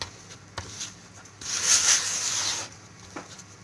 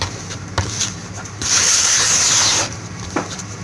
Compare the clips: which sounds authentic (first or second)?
first